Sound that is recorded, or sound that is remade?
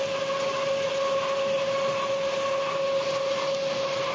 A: recorded